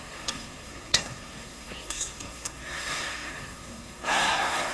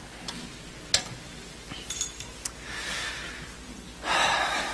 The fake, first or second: first